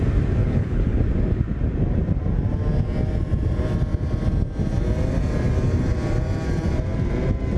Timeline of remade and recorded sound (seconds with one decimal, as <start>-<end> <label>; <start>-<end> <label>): 0.0-0.4 recorded; 0.4-1.0 remade; 1.0-7.6 recorded